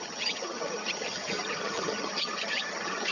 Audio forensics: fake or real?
fake